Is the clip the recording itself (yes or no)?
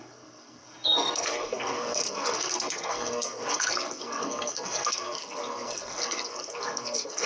no